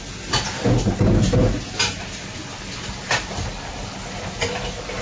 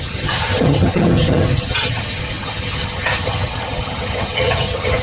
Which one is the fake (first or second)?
second